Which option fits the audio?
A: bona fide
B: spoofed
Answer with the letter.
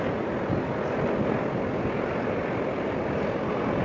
A